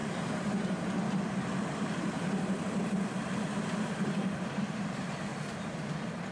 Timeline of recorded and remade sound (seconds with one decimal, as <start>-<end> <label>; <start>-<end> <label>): 0.0-3.5 recorded; 3.5-5.3 remade; 5.3-6.3 recorded

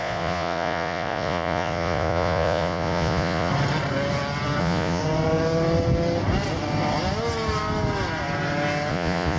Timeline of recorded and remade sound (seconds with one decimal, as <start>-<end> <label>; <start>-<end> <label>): 0.0-3.5 remade; 3.5-4.6 recorded; 4.6-5.0 remade; 5.0-8.9 recorded; 8.9-9.4 remade

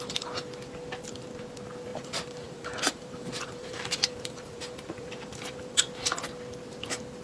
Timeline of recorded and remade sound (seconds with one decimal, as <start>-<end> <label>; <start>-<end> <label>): 0.0-1.9 recorded; 1.9-6.2 remade; 6.2-7.2 recorded

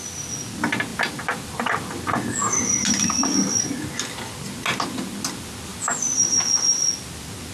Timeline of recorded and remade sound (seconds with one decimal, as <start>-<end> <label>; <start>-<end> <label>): 0.0-7.5 recorded